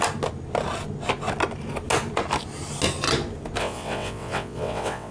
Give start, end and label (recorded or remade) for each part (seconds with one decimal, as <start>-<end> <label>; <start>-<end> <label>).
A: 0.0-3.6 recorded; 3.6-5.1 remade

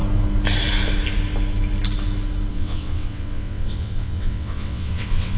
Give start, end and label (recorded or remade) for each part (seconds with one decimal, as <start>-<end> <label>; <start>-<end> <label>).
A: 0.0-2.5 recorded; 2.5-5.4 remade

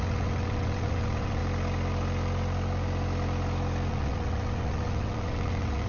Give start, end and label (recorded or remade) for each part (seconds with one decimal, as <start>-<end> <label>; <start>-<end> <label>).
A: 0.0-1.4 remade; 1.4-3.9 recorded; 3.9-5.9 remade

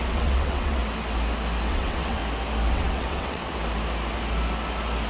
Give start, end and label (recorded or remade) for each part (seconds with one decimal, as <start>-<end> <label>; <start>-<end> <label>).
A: 0.0-0.8 remade; 0.8-1.7 recorded; 1.7-2.2 remade; 2.2-2.7 recorded; 2.7-3.4 remade; 3.4-5.1 recorded

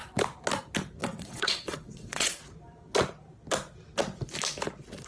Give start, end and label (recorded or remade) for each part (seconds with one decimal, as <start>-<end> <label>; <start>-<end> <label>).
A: 0.0-1.0 recorded; 1.0-2.4 remade; 2.4-5.1 recorded

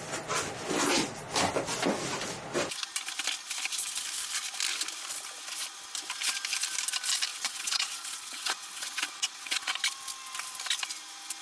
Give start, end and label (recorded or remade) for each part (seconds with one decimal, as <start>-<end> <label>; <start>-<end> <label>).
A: 0.0-7.3 recorded; 7.3-9.8 remade; 9.8-11.4 recorded

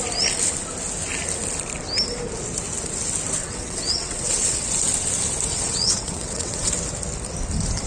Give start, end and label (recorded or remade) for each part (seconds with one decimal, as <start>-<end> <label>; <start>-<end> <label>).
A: 0.0-3.4 recorded; 3.4-4.7 remade; 4.7-5.5 recorded; 5.5-6.7 remade; 6.7-7.9 recorded

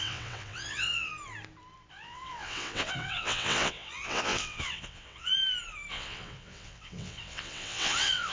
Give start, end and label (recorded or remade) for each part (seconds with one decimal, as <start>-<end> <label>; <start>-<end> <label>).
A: 0.0-1.1 remade; 1.1-1.9 recorded; 1.9-5.3 remade; 5.3-5.9 recorded; 5.9-8.3 remade